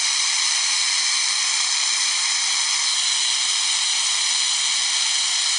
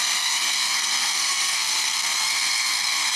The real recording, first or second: first